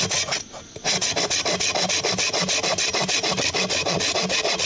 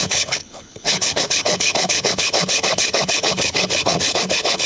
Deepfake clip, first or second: second